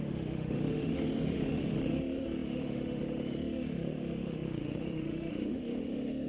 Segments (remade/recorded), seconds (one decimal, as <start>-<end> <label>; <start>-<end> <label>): 0.0-6.3 remade